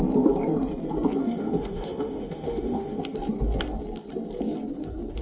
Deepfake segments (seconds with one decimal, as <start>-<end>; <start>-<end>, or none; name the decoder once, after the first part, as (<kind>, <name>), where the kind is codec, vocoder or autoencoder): 1.2-3.0 (autoencoder, DAC-VAE)